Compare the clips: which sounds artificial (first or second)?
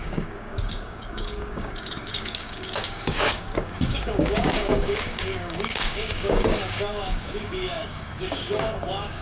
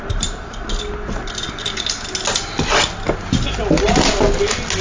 first